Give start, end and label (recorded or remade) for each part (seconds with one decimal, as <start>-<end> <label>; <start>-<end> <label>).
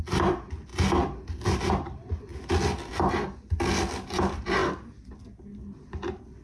0.0-6.4 recorded